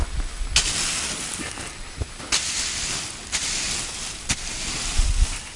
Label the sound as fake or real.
real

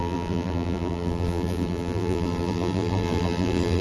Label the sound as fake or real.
fake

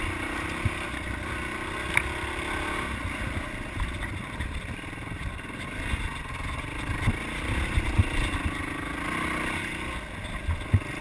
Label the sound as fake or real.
real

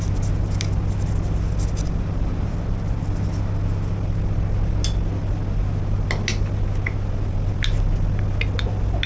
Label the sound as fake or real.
real